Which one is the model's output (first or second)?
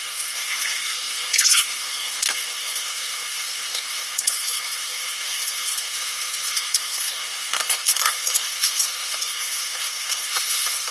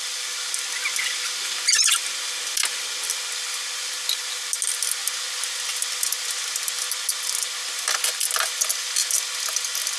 first